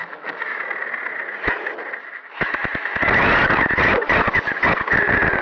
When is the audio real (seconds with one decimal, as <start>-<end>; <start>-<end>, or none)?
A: 0.6-2.0; 3.0-5.4